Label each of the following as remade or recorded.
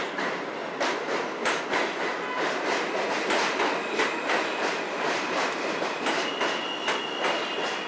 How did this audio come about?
recorded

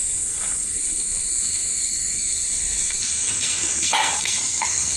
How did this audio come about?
remade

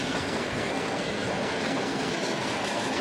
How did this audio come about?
remade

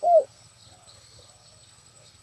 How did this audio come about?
remade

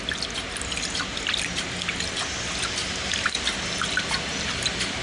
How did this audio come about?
recorded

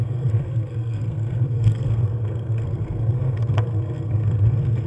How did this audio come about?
remade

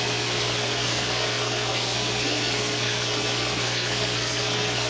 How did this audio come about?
remade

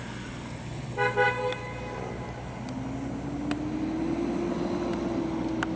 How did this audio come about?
recorded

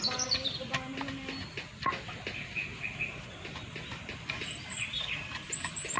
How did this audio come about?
recorded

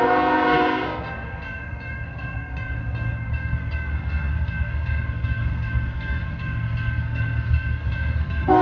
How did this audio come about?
remade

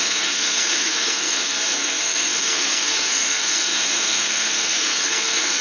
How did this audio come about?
remade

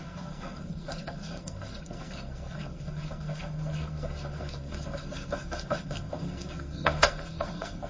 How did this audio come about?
remade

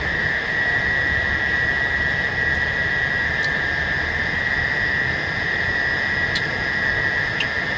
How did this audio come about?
recorded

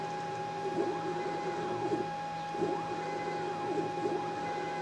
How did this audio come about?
recorded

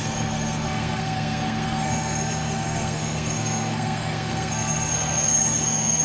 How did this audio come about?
remade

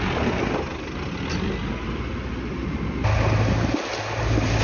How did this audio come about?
recorded